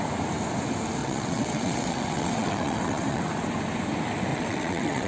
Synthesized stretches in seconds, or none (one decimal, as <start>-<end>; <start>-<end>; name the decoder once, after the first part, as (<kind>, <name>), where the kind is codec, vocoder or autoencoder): 1.0-3.2 (vocoder, WaveNeXt); 4.3-5.1